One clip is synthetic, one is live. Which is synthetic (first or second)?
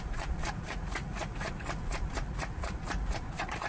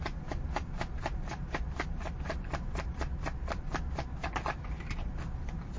first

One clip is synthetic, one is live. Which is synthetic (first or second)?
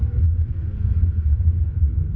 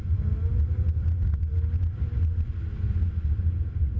first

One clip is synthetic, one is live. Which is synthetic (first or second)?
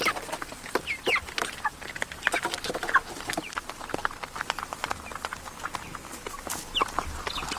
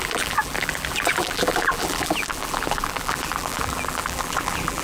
second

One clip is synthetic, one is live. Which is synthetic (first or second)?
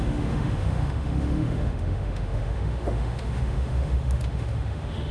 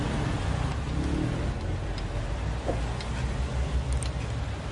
first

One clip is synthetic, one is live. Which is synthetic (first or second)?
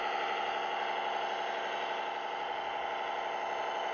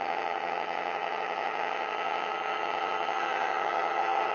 second